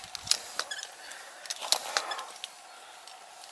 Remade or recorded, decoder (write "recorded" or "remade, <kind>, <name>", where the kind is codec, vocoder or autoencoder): recorded